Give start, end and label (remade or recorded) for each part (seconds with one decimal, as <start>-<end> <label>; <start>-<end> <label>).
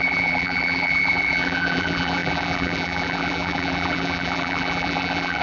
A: 0.0-5.4 remade